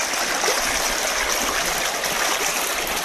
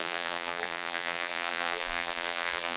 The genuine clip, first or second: first